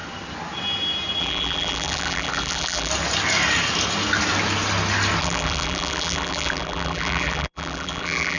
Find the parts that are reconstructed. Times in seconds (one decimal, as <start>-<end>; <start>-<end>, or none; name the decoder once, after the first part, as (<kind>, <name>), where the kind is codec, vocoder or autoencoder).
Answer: 1.2-2.9 (vocoder, BigVGAN v2); 5.2-8.4